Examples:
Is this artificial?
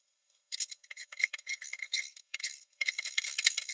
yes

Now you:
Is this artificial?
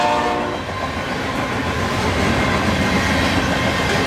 no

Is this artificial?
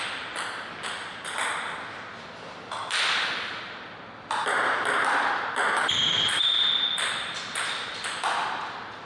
no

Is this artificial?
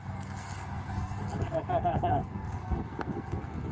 yes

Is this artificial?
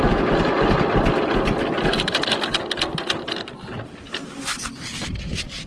no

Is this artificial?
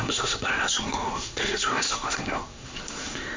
yes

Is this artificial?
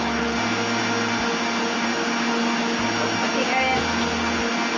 no